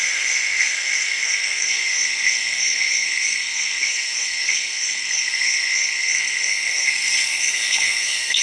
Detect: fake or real fake